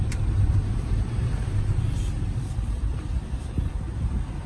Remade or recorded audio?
remade